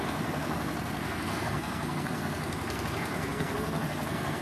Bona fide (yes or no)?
no